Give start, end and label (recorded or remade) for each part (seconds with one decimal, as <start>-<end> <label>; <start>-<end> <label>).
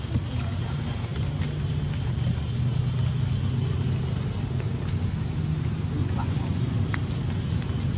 0.0-6.0 recorded; 6.0-6.8 remade; 6.8-8.0 recorded